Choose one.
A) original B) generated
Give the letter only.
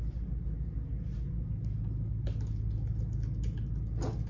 A